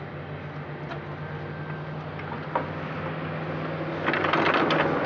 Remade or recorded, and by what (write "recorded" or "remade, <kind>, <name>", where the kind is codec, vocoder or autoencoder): recorded